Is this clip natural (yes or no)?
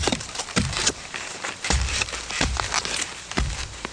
no